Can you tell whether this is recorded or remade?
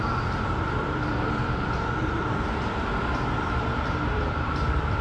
remade